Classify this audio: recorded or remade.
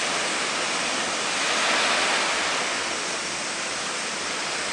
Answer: recorded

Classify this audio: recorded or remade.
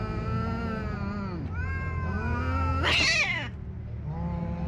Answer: recorded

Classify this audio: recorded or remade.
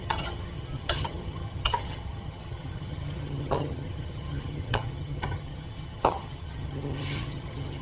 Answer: remade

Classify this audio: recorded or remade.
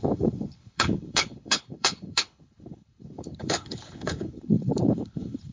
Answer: remade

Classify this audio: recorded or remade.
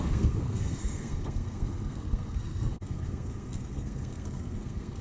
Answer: remade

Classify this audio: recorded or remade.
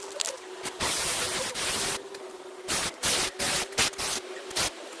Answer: recorded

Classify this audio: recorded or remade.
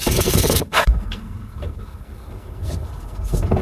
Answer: remade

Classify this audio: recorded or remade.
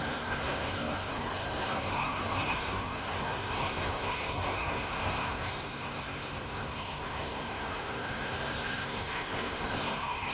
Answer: remade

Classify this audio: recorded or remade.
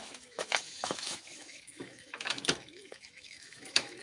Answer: remade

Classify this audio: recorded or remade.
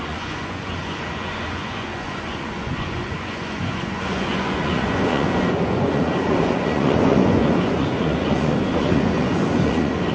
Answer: remade